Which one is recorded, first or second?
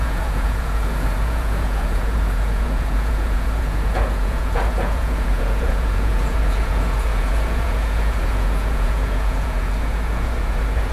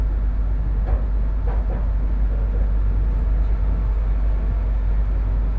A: second